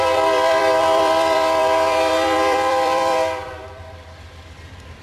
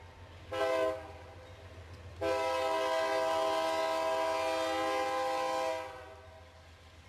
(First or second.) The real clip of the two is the second